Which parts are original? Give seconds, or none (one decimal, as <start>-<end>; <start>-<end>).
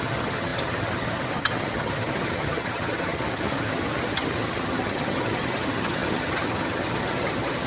none